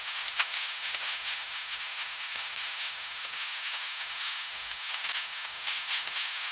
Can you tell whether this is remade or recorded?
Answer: remade